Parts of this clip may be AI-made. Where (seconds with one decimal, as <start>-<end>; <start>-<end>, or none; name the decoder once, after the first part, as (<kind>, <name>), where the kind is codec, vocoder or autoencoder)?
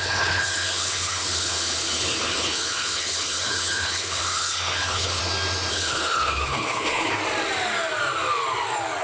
0.0-5.2 (codec, HILCodec); 5.7-7.2